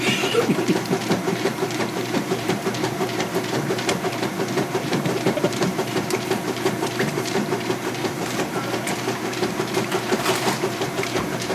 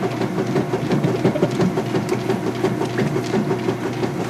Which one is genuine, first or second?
second